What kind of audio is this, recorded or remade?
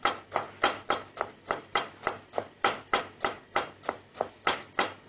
recorded